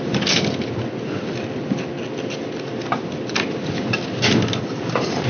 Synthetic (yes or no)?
no